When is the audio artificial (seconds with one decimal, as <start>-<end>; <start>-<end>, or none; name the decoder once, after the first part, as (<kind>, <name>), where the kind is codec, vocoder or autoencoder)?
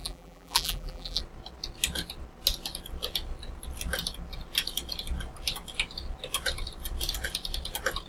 0.0-1.2 (vocoder, BigVGAN v2)